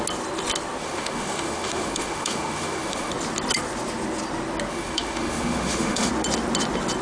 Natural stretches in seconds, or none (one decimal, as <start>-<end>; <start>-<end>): 0.0-0.8; 3.1-4.7; 6.1-7.0